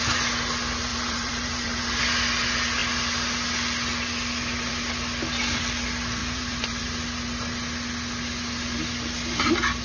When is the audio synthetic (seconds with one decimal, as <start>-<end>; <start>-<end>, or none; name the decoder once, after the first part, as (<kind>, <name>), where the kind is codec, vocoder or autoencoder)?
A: 0.9-2.0 (vocoder, BigVGAN v2); 6.2-6.8